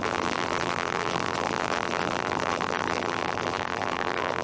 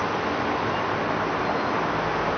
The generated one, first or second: first